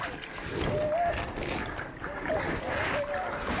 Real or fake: fake